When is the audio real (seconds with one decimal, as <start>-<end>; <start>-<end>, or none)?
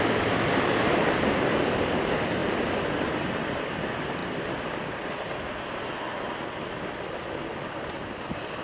2.4-3.0; 4.2-6.9